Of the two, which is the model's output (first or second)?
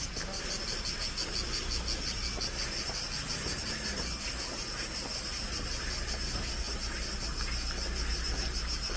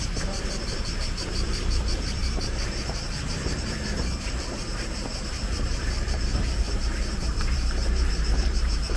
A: second